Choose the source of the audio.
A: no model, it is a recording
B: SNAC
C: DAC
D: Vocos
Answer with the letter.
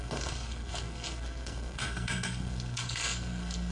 B